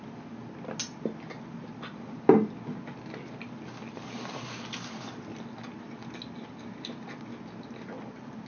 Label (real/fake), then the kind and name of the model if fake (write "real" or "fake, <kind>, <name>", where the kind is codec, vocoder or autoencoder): real